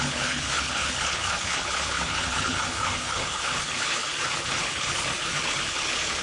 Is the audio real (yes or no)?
no